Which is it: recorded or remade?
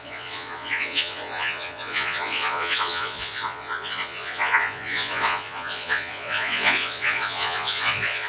remade